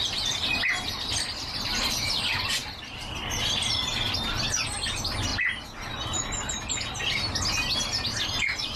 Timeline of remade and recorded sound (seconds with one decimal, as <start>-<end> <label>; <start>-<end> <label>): 0.0-8.8 recorded